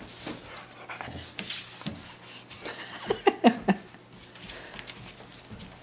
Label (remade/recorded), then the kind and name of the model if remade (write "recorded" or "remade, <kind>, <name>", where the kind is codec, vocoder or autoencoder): recorded